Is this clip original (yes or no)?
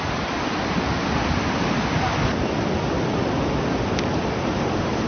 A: yes